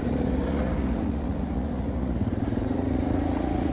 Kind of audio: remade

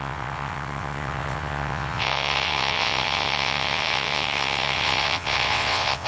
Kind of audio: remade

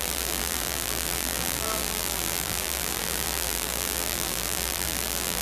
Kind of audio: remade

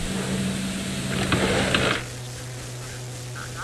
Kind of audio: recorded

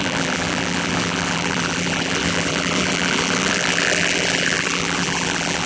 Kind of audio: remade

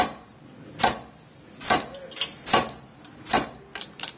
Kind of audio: recorded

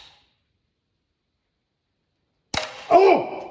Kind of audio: recorded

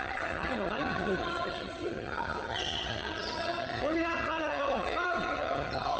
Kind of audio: remade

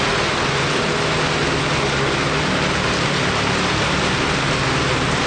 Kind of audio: recorded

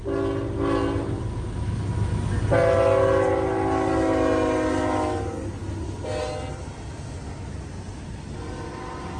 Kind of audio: recorded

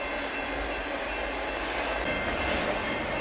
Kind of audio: recorded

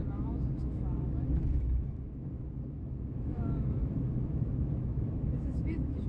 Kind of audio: remade